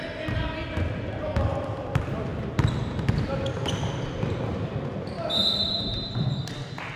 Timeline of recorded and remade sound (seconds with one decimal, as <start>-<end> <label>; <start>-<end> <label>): 0.0-7.0 recorded